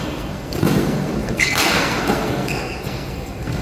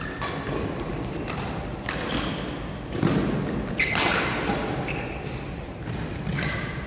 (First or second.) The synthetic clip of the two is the first